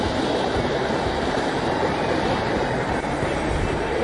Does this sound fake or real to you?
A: fake